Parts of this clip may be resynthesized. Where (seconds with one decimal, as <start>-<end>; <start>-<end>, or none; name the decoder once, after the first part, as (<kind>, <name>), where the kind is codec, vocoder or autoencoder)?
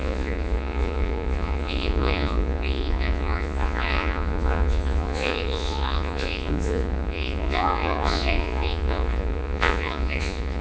0.0-10.6 (vocoder, Vocos)